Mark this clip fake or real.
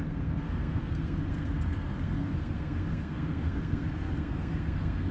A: fake